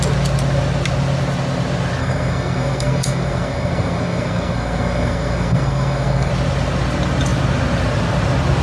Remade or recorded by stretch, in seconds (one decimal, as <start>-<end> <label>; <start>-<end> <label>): 0.0-2.0 recorded; 2.0-6.3 remade; 6.3-8.6 recorded